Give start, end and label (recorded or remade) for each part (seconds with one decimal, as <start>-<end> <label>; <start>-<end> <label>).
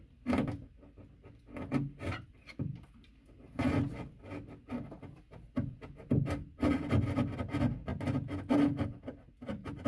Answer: 0.0-9.9 recorded